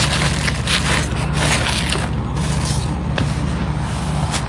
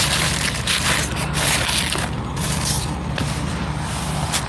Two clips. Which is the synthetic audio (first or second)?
second